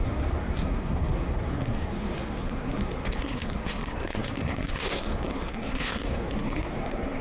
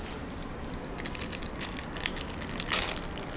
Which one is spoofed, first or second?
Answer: first